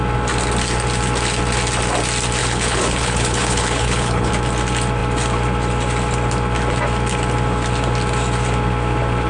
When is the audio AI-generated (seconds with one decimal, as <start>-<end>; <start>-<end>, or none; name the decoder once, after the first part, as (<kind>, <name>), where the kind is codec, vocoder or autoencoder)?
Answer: 2.4-4.3 (codec, HILCodec)